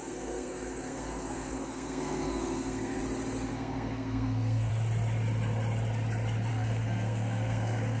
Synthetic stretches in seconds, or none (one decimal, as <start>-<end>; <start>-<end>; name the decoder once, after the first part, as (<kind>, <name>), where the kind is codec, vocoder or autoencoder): 0.0-3.0 (codec, SNAC); 3.5-4.7; 6.5-8.0